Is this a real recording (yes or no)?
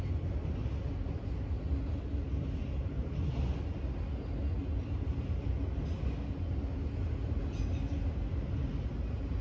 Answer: yes